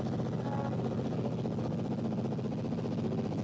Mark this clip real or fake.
real